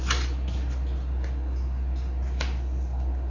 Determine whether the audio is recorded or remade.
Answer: recorded